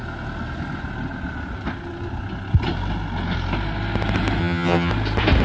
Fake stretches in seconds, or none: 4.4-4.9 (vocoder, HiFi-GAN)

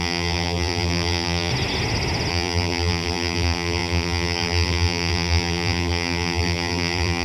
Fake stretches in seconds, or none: 0.0-1.5 (vocoder, BigVGAN v2); 2.3-7.2

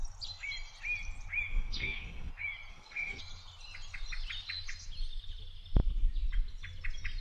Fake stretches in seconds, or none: 1.5-2.3 (codec, SNAC); 2.7-3.2

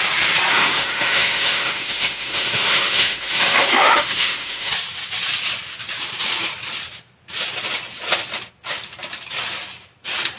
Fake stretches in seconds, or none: 0.5-4.7 (autoencoder, DAC-VAE)

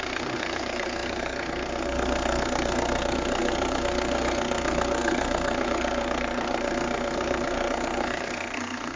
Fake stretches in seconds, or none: 0.0-9.0 (codec, SNAC)

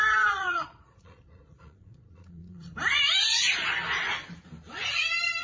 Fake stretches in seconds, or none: 0.0-2.7 (vocoder, Vocos)

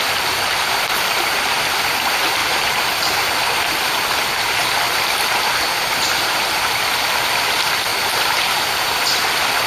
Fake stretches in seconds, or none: 2.4-3.3 (vocoder, BigVGAN v2); 7.9-8.6

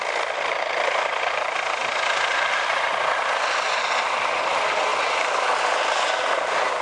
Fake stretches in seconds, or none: none